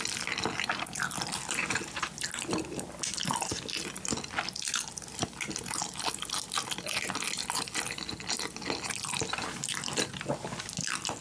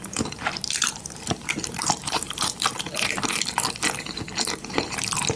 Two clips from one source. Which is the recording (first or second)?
first